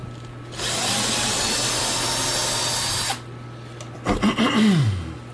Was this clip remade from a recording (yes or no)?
no